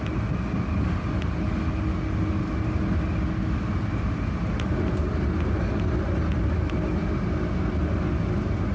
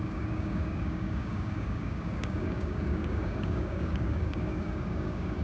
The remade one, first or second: second